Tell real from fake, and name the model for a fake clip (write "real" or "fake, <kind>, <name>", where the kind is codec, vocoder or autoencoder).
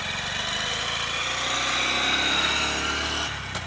real